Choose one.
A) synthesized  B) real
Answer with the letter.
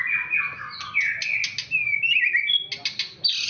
B